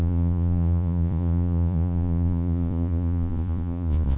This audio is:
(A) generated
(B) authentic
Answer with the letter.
A